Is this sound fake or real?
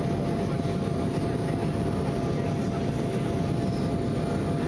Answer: real